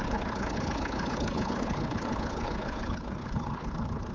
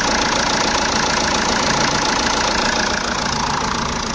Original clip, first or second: second